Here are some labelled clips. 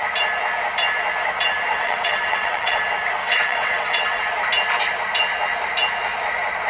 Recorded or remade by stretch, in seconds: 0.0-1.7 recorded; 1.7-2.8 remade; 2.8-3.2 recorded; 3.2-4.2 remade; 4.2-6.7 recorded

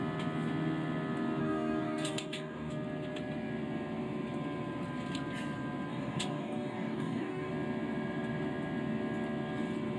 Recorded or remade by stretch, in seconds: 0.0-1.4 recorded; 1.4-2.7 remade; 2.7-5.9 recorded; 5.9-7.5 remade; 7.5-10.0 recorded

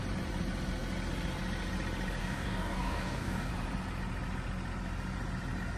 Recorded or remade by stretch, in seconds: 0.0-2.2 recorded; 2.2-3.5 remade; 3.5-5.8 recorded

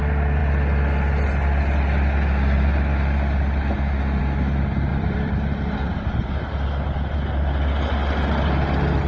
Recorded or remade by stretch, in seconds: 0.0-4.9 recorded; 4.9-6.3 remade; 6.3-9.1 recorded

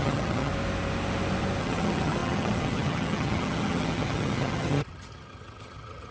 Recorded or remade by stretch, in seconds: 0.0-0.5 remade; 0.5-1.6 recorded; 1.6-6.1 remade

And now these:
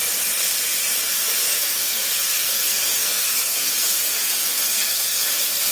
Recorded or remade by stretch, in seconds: 0.0-1.1 recorded; 1.1-5.7 remade